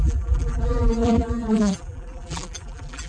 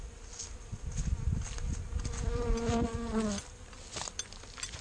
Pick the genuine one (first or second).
second